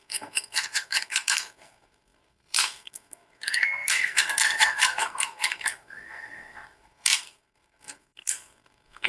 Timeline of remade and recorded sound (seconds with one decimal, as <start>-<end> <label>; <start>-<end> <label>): 0.0-9.1 remade